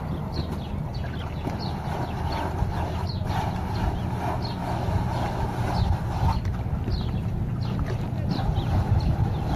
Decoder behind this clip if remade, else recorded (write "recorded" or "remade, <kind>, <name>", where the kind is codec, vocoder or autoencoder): recorded